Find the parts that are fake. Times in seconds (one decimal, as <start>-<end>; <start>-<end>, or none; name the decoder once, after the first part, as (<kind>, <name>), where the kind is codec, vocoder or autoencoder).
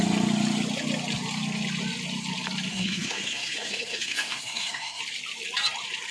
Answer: 2.7-5.0 (codec, SNAC)